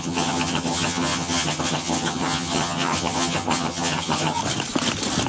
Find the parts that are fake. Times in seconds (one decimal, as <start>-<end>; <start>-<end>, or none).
0.0-4.4

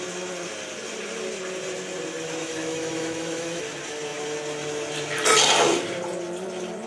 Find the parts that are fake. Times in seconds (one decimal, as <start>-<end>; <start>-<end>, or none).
2.4-3.6

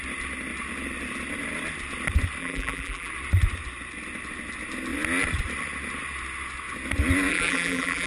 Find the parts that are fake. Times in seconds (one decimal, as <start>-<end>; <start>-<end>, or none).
2.4-3.1; 7.3-8.1

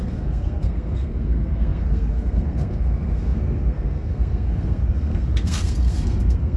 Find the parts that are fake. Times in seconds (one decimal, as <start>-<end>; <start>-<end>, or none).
0.0-6.6

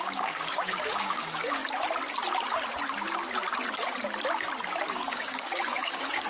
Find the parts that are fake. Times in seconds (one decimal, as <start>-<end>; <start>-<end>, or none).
0.0-1.6; 4.9-6.3

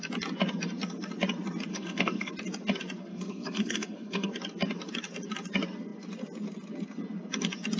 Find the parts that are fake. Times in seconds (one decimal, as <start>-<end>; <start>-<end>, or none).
1.7-2.3; 3.0-4.3

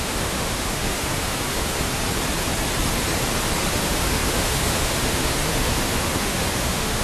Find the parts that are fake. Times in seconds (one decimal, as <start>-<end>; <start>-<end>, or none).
0.0-1.9; 3.7-7.0

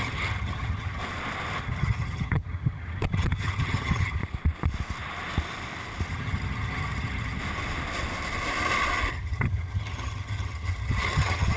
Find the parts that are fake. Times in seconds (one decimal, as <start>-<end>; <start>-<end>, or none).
0.0-1.0; 1.6-4.2; 6.1-7.4; 9.1-11.6